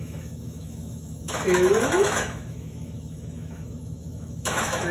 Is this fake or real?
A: fake